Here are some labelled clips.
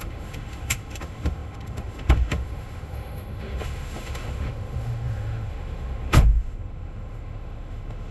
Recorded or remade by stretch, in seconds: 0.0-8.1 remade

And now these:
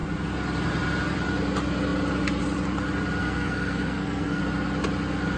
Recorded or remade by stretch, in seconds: 0.0-3.2 recorded; 3.2-4.4 remade; 4.4-5.4 recorded

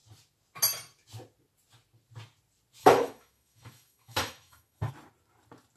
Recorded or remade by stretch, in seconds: 0.0-2.8 recorded; 2.8-4.9 remade; 4.9-5.8 recorded

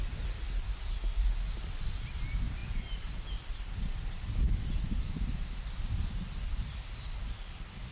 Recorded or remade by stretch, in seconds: 0.0-7.9 recorded

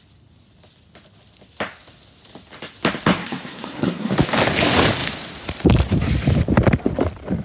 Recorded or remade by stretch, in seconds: 0.0-3.2 recorded; 3.2-4.1 remade; 4.1-7.4 recorded

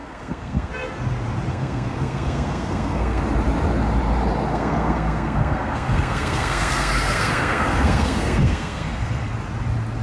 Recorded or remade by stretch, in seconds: 0.0-0.7 remade; 0.7-1.5 recorded; 1.5-3.2 remade; 3.2-4.5 recorded; 4.5-9.3 remade; 9.3-10.0 recorded

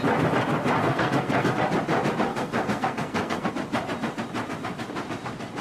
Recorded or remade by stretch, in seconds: 0.0-0.8 recorded; 0.8-1.5 remade; 1.5-2.3 recorded; 2.3-3.5 remade; 3.5-5.6 recorded

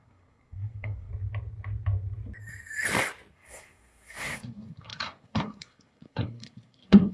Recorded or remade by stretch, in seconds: 0.0-1.1 remade; 1.1-3.3 recorded; 3.3-7.1 remade